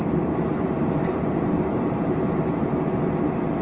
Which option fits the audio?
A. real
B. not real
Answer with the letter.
B